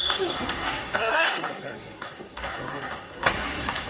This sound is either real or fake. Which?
fake